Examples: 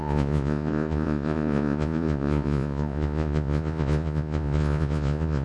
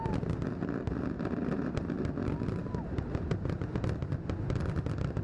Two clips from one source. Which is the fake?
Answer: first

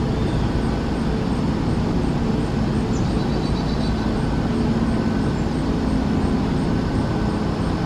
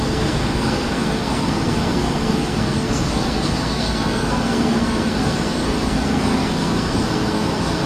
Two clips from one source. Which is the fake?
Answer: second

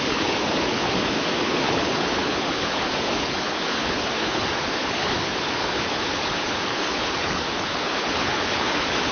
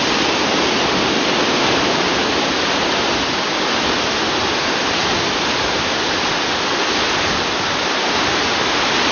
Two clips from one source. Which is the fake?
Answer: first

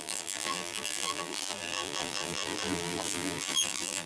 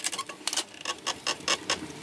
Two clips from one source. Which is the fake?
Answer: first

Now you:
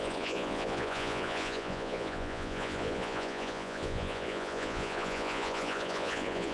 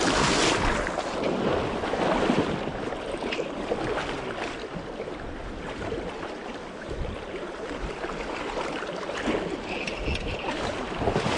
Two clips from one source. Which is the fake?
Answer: first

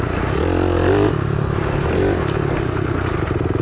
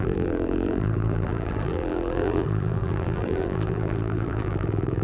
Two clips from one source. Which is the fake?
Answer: second